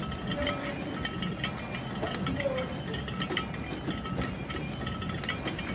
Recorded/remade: recorded